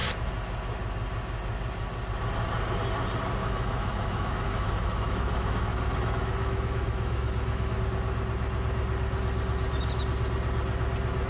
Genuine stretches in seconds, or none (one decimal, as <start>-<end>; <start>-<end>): 0.0-3.4; 7.8-11.3

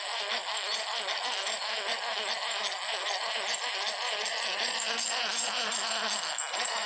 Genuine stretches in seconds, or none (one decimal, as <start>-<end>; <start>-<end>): 0.0-6.9